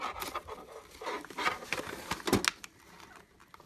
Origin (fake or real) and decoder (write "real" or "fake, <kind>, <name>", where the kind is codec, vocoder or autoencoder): real